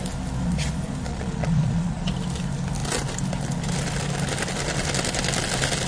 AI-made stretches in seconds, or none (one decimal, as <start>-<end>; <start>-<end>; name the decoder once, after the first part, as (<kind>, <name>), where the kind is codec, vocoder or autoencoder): 1.1-2.1 (vocoder, Vocos)